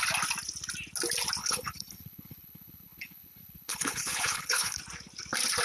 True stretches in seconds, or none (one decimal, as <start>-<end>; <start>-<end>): 0.0-1.4; 4.8-5.6